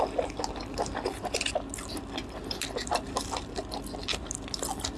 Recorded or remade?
recorded